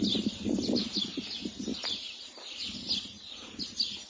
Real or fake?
real